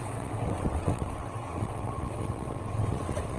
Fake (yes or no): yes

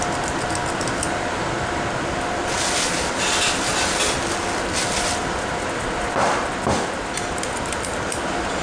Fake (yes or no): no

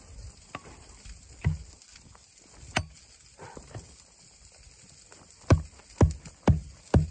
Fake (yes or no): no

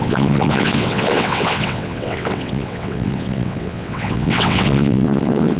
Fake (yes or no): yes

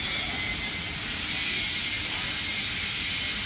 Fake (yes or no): no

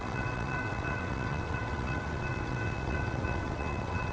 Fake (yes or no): yes